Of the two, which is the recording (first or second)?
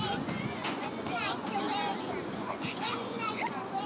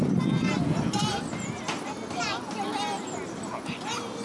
second